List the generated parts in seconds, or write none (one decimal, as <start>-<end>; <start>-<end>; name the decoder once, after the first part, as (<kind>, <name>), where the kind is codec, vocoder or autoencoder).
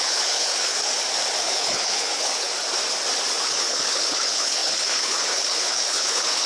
0.0-0.8 (codec, HILCodec); 1.4-2.5; 3.4-6.5